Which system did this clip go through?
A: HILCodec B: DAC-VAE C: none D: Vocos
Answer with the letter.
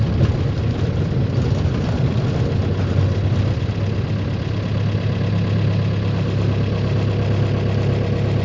C